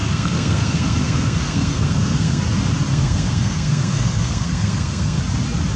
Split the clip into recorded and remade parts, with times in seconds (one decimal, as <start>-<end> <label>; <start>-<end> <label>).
0.0-2.4 remade; 2.4-2.9 recorded; 2.9-5.2 remade; 5.2-5.8 recorded